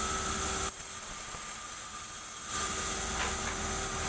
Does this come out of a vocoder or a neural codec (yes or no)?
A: no